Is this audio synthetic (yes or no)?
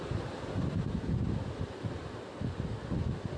no